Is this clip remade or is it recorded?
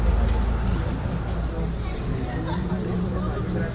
recorded